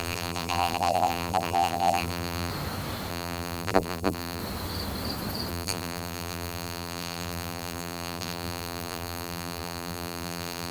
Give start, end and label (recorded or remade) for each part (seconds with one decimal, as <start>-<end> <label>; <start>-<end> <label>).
0.0-2.5 remade; 2.5-3.1 recorded; 3.1-4.4 remade; 4.4-5.5 recorded; 5.5-10.7 remade